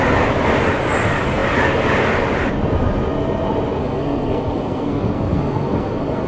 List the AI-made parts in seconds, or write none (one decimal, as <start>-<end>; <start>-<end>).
3.8-6.3

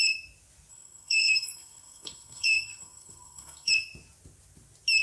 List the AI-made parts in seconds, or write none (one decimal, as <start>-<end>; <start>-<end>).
0.7-3.7

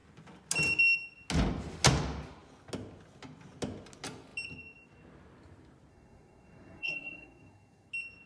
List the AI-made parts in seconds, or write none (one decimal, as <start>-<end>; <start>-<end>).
5.9-7.9